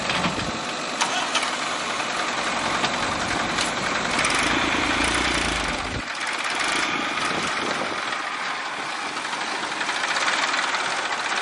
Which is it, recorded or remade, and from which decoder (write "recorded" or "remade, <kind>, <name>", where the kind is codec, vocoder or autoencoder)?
recorded